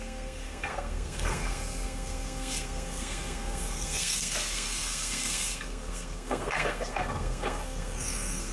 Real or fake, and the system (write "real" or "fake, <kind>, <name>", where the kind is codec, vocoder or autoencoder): fake, codec, SNAC